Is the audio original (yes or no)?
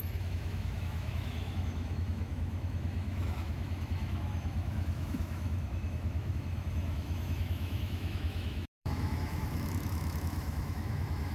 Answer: no